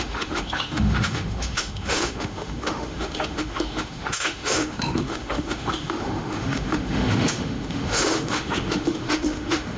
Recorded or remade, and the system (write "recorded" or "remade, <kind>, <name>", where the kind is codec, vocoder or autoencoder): remade, autoencoder, DAC-VAE